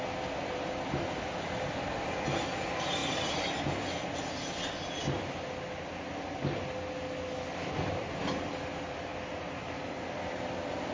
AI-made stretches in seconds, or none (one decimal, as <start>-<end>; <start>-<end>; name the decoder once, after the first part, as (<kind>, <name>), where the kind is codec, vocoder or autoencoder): none